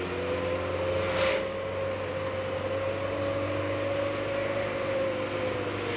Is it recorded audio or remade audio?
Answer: recorded